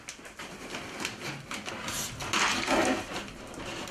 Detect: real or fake real